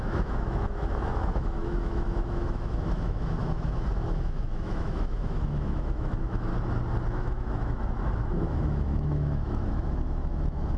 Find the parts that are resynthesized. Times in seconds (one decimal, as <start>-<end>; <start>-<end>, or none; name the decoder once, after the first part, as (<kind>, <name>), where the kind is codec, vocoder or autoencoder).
0.0-6.5 (autoencoder, DAC-VAE); 7.1-10.8